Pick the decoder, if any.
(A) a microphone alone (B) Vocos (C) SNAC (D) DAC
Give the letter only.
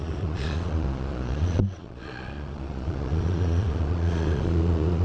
B